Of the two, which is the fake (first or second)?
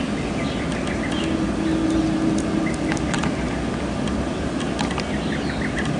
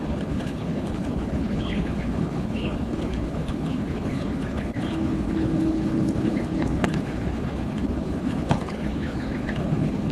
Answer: second